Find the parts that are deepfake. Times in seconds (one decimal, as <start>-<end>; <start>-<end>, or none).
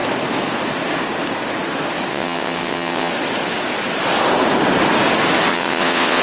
2.1-3.1; 5.5-6.2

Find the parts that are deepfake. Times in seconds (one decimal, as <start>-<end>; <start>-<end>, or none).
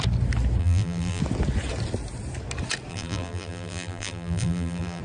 0.6-1.2; 2.9-5.0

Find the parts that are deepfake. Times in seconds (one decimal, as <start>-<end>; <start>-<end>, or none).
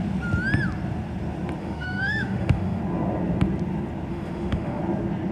1.6-2.8; 4.1-4.8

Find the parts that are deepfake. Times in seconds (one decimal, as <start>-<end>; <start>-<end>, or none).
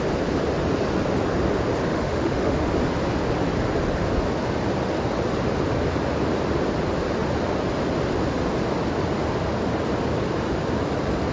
1.9-2.7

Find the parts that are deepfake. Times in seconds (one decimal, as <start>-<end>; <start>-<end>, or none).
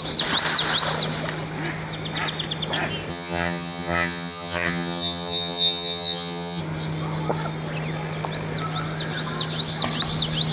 3.1-6.6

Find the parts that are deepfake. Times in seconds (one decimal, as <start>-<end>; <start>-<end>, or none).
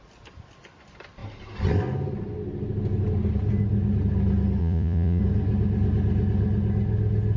4.6-5.2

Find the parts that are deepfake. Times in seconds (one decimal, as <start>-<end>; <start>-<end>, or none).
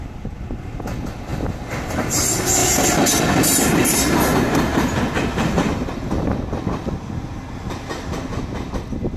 none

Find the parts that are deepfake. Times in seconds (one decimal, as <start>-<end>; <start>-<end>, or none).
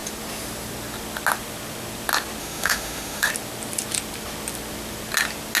2.4-3.3